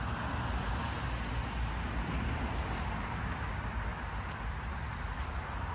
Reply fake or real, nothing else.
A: real